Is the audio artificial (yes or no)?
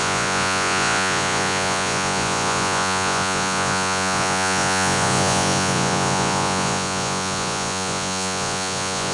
yes